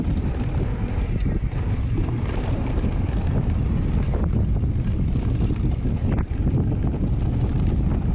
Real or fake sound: real